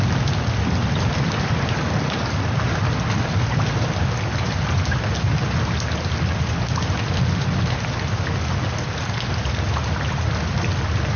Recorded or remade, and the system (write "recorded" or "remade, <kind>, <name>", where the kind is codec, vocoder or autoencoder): recorded